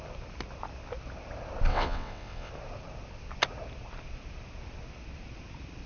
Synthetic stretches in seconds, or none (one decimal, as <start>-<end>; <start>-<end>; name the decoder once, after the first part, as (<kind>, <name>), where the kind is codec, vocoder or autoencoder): 1.7-2.5 (vocoder, WaveNeXt)